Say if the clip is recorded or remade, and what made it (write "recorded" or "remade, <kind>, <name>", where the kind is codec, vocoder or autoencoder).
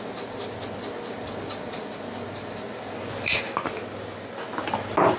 recorded